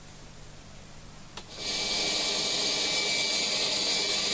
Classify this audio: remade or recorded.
recorded